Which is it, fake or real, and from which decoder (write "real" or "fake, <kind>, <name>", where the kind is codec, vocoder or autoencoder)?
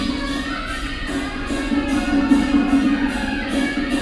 fake, vocoder, Vocos